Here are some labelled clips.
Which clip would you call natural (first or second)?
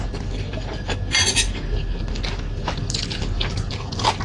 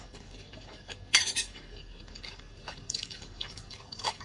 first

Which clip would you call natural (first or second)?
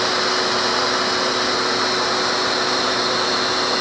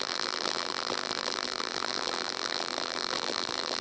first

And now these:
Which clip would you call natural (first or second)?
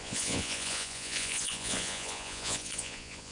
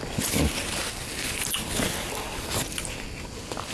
second